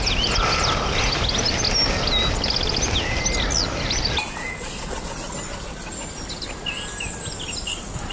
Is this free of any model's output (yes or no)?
yes